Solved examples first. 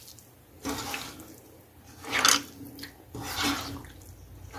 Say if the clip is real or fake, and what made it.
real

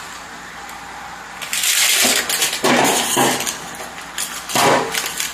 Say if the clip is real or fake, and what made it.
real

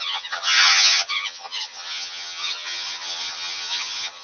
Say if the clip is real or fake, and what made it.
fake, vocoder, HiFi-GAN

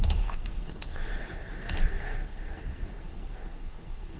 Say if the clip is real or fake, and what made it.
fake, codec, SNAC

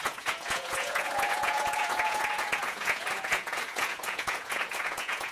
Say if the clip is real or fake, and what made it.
fake, vocoder, Vocos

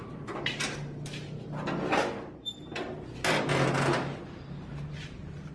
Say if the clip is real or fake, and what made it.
real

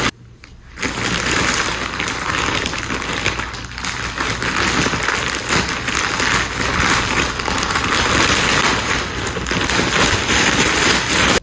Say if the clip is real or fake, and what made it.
real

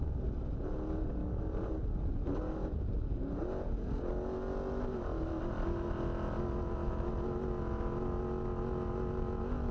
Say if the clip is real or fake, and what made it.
real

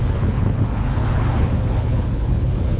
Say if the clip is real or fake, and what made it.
fake, codec, HILCodec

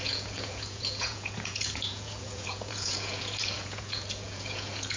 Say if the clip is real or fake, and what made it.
fake, vocoder, Vocos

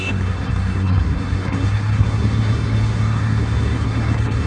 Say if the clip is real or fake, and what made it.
fake, codec, SNAC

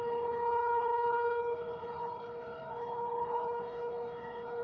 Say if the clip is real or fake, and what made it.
fake, codec, HILCodec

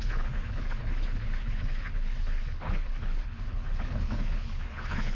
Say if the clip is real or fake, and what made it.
fake, codec, HILCodec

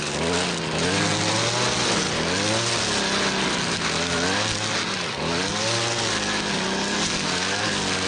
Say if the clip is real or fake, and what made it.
real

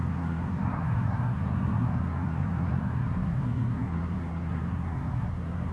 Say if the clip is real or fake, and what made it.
fake, codec, SNAC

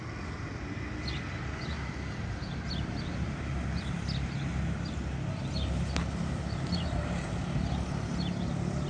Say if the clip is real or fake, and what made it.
real